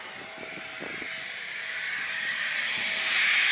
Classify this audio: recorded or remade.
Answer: recorded